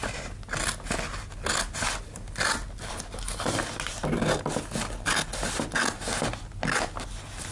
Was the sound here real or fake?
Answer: real